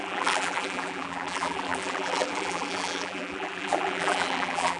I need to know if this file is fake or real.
fake